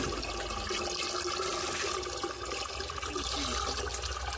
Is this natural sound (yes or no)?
yes